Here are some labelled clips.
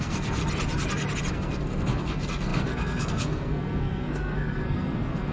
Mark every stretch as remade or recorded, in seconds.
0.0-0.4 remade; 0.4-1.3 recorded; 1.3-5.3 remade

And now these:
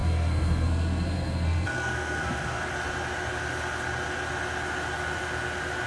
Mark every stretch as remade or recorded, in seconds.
0.0-2.7 remade; 2.7-5.9 recorded